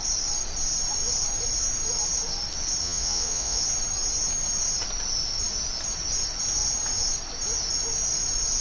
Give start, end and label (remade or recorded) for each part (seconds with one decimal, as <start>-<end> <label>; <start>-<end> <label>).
0.0-2.8 recorded; 2.8-3.6 remade; 3.6-8.6 recorded